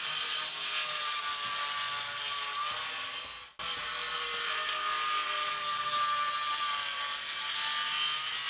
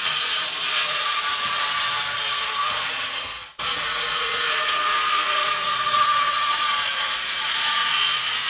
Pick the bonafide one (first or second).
first